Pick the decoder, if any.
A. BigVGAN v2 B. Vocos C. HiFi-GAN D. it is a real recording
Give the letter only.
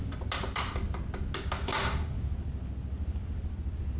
D